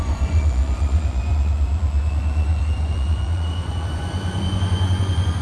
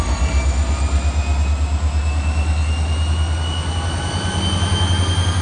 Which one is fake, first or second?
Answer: first